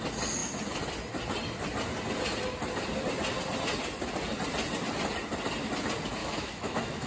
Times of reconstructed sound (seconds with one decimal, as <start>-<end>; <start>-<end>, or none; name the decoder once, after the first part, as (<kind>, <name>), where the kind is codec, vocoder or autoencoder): 6.2-7.1 (autoencoder, DAC-VAE)